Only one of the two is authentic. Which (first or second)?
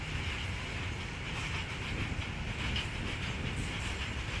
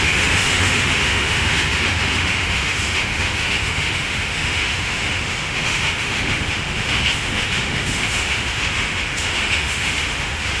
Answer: first